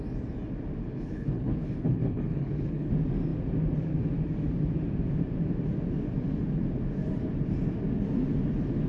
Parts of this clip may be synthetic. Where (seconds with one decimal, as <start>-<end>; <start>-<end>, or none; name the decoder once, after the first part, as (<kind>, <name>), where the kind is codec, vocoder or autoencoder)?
0.8-2.9 (codec, HILCodec)

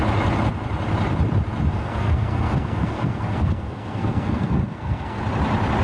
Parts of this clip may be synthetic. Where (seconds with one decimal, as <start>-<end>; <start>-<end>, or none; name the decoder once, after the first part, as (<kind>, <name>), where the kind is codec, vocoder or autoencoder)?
1.7-5.2 (codec, SNAC)

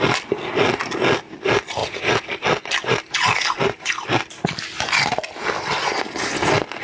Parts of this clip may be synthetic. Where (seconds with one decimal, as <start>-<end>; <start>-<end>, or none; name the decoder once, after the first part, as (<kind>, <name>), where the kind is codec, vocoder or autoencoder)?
none

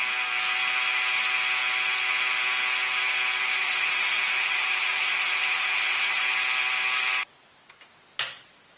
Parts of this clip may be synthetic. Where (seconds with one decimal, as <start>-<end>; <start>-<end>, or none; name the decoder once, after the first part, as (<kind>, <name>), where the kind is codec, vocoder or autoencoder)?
3.6-6.2 (vocoder, Vocos)

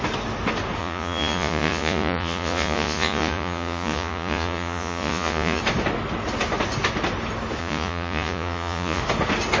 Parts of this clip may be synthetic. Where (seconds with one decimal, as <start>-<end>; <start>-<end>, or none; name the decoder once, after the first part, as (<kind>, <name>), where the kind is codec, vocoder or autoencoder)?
0.8-5.6 (vocoder, Vocos); 7.6-9.0

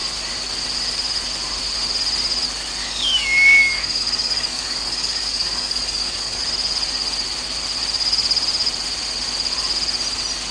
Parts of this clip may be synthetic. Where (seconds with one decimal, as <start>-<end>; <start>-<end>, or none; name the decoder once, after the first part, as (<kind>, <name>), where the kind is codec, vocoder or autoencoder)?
2.8-6.4 (codec, DAC)

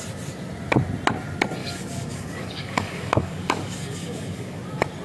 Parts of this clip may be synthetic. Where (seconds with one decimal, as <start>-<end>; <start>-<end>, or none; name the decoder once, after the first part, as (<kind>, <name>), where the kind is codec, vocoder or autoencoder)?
1.6-4.6 (codec, DAC)